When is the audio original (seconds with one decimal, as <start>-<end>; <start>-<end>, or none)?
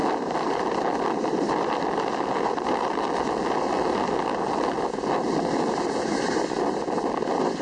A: 0.0-7.6